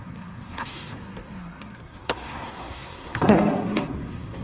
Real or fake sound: fake